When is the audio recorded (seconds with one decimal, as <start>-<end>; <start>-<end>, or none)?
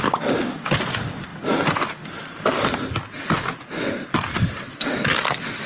0.0-5.7